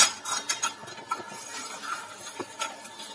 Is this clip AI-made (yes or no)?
no